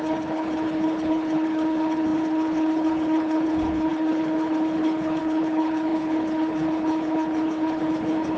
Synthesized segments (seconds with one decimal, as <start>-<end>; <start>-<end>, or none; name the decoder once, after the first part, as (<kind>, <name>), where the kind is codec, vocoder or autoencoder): 0.0-8.4 (codec, HILCodec)